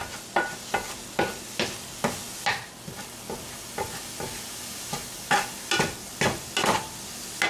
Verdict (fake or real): real